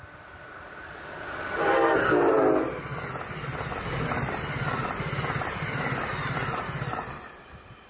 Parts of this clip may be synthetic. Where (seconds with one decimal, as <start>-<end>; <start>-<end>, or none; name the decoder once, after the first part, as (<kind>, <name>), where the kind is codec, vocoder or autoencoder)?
none